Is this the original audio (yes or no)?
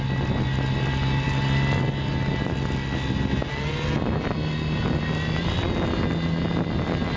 yes